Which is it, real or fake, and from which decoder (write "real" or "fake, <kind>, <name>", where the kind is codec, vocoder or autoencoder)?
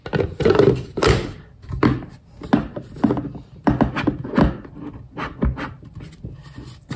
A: real